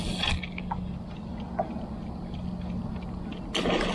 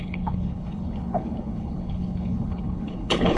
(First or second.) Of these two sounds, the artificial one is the second